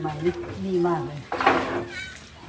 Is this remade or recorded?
recorded